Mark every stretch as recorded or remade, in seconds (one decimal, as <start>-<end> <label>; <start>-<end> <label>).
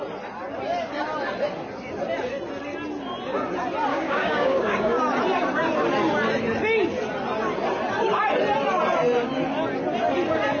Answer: 0.0-3.9 recorded; 3.9-5.0 remade; 5.0-10.6 recorded